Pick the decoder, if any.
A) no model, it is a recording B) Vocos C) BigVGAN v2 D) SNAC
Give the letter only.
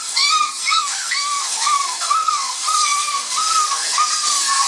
D